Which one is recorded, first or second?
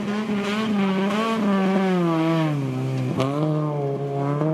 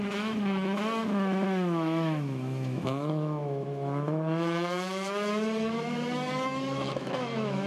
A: first